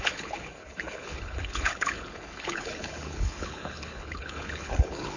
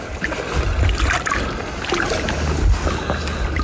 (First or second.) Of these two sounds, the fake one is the first